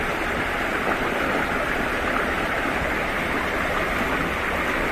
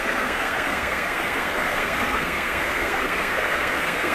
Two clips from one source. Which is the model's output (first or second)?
second